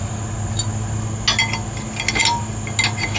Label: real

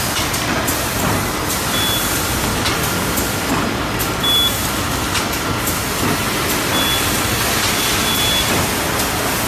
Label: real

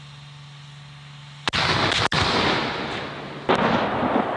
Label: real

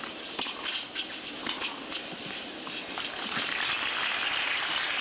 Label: real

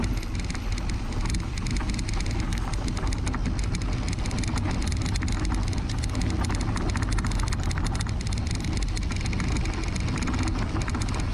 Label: real